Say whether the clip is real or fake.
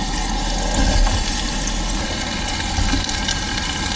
real